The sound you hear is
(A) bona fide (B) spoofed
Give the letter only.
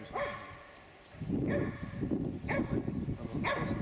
A